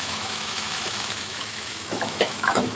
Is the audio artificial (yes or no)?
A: yes